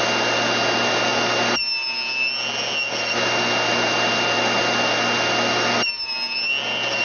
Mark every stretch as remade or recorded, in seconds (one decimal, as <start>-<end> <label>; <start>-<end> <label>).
0.0-7.0 recorded